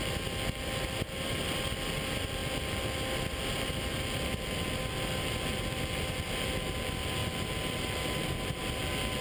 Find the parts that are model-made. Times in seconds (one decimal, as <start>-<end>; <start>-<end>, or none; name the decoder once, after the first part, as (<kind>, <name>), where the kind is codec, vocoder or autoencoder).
none